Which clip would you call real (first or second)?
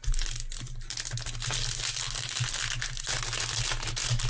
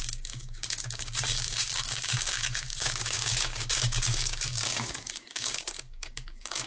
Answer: first